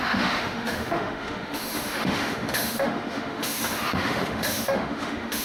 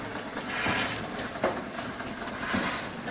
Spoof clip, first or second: first